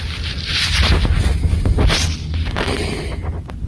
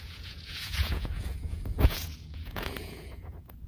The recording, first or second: first